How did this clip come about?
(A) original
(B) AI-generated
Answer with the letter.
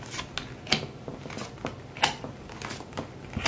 A